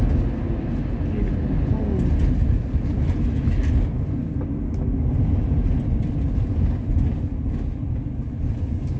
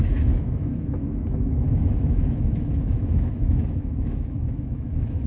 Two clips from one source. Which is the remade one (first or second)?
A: second